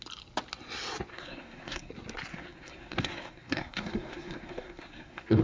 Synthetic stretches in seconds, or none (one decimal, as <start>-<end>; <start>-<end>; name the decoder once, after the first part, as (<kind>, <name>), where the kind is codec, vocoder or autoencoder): 1.1-1.9 (codec, SNAC); 2.3-5.4